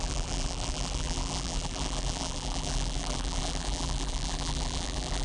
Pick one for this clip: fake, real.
fake